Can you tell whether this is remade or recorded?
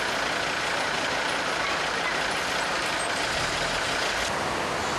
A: recorded